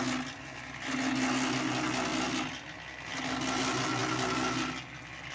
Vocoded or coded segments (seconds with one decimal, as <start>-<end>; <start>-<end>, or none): none